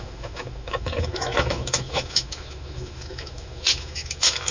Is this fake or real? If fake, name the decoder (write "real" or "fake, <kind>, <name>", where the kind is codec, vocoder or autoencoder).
fake, autoencoder, DAC-VAE